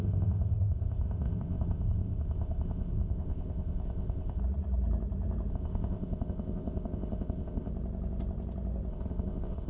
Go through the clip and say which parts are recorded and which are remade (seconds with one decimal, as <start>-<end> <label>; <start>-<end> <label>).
0.0-4.4 remade; 4.4-5.5 recorded; 5.5-7.7 remade; 7.7-8.9 recorded; 8.9-9.7 remade